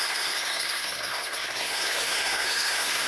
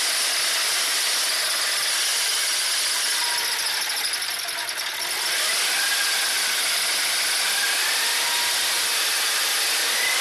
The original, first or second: second